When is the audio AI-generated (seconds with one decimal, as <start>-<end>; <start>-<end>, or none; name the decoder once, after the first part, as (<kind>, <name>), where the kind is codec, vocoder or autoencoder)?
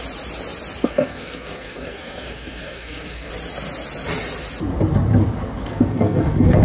0.8-3.3 (codec, SNAC); 5.6-6.6